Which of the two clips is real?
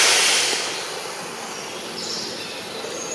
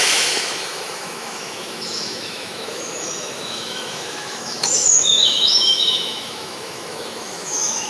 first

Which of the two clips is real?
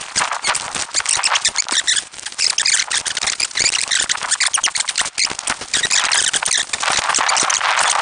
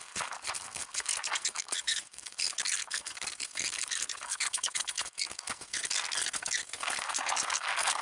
first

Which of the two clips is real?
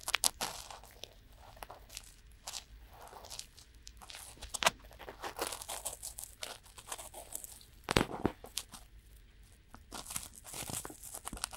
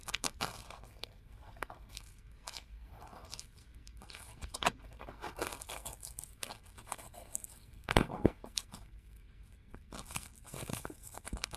first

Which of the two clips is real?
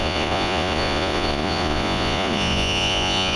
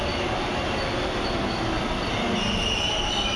second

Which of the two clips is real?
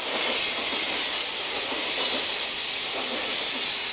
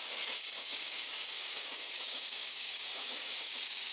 first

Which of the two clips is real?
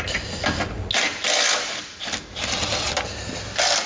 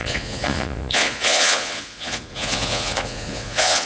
first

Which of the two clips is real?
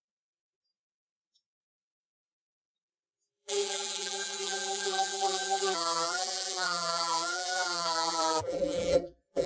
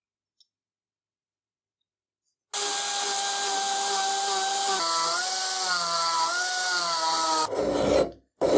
second